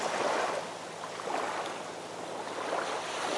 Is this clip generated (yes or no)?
no